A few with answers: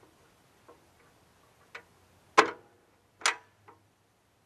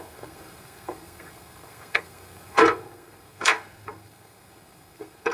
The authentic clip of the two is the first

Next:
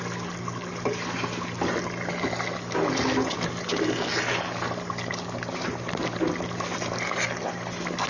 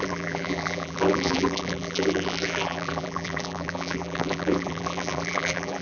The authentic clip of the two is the first